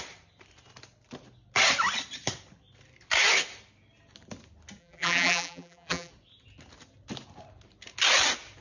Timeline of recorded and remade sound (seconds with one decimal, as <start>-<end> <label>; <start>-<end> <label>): 0.0-4.8 recorded; 4.8-6.1 remade; 6.1-8.6 recorded